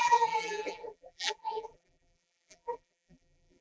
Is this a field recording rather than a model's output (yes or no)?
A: no